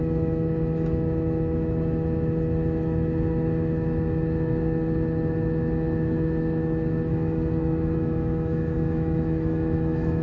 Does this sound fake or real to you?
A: fake